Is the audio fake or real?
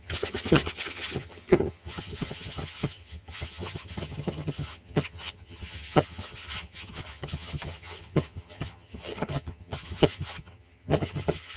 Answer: fake